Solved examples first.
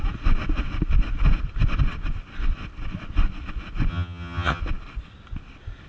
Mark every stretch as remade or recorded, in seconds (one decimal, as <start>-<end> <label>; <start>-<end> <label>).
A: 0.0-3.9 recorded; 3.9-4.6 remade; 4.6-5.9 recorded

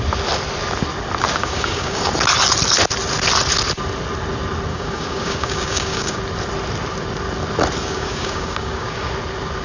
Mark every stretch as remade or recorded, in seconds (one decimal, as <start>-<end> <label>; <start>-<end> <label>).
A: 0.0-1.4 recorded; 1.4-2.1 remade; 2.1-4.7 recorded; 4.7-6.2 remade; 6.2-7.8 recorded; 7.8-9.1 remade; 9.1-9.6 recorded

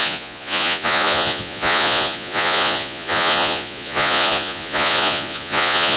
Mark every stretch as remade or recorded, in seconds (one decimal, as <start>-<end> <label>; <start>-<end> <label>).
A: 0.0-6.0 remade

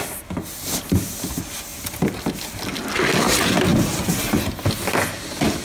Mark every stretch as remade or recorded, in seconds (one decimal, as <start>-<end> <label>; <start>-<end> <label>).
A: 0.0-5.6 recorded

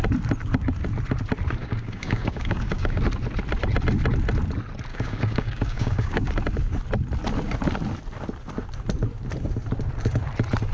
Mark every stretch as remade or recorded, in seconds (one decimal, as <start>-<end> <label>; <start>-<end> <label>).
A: 0.0-1.6 recorded; 1.6-3.0 remade; 3.0-4.9 recorded; 4.9-6.3 remade; 6.3-10.7 recorded

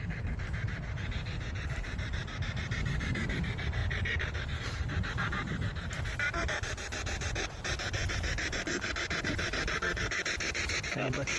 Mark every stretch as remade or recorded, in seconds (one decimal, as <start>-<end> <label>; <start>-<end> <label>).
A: 0.0-3.8 remade; 3.8-4.6 recorded; 4.6-11.4 remade